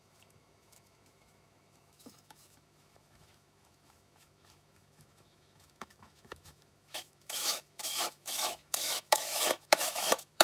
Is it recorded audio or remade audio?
remade